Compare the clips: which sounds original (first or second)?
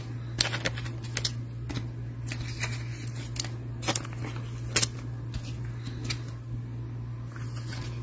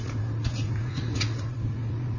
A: first